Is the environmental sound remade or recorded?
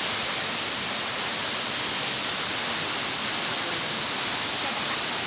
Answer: recorded